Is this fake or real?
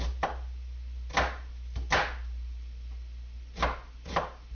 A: real